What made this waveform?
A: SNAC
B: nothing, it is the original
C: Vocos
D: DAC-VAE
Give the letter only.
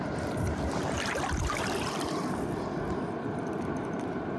B